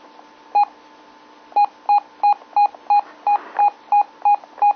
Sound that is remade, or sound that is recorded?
recorded